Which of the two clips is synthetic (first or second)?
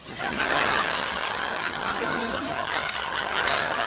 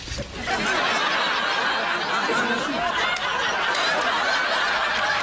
first